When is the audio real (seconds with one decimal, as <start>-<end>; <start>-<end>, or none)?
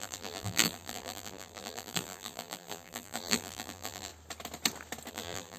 4.1-5.1